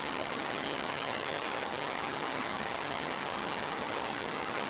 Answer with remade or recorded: remade